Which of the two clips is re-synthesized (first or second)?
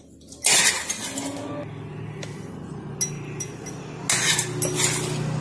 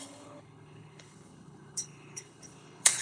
second